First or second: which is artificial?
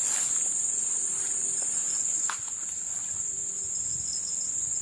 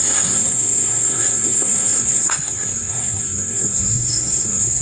second